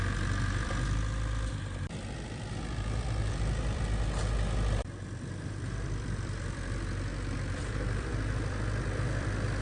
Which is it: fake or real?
fake